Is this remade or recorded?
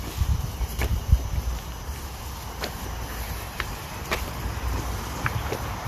remade